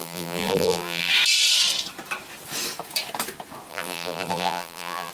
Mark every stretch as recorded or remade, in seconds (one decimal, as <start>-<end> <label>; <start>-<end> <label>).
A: 0.0-1.1 remade; 1.1-3.7 recorded; 3.7-5.1 remade